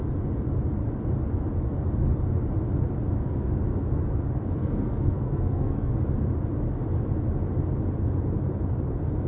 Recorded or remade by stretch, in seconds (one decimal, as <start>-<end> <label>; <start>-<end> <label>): 0.0-4.6 recorded; 4.6-5.9 remade; 5.9-9.3 recorded